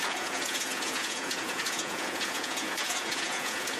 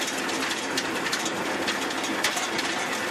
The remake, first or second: first